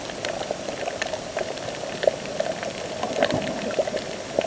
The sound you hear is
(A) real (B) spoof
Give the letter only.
A